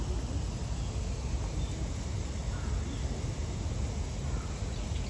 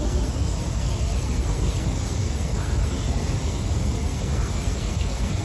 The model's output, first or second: second